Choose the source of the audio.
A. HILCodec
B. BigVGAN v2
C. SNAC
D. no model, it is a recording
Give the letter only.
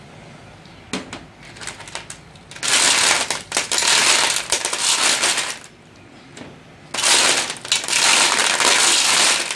D